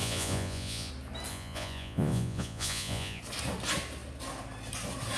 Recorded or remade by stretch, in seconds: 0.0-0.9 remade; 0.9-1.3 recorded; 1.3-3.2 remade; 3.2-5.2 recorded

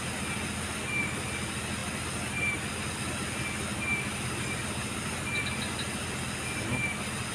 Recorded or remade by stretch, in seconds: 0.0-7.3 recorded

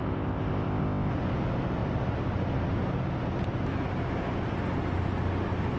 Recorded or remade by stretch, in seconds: 0.0-1.1 remade; 1.1-5.8 recorded

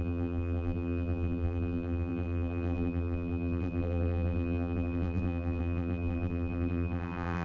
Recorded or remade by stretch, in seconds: 0.0-7.4 remade

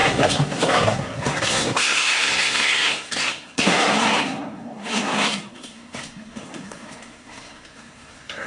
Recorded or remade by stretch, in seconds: 0.0-8.5 remade